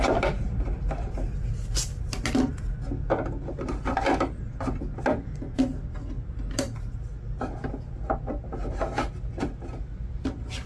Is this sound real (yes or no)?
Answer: yes